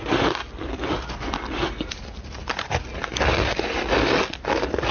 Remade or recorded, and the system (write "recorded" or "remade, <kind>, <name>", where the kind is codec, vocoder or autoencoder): recorded